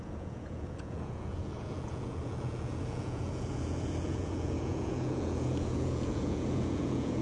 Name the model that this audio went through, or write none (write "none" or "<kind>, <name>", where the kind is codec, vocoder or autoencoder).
vocoder, Vocos